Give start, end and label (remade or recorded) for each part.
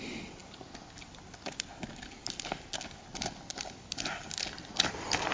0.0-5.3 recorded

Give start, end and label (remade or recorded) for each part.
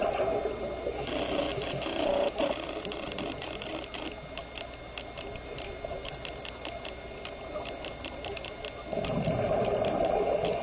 0.0-1.5 recorded; 1.5-3.7 remade; 3.7-10.6 recorded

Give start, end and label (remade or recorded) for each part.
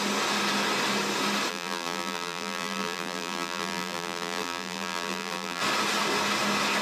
0.0-1.5 recorded; 1.5-5.6 remade; 5.6-6.8 recorded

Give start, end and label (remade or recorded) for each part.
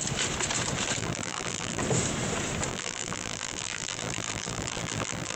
0.0-1.0 recorded; 1.0-1.8 remade; 1.8-2.7 recorded; 2.7-5.4 remade